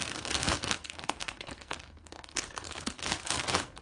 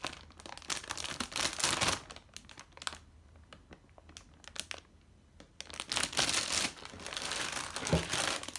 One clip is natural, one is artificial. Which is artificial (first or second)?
first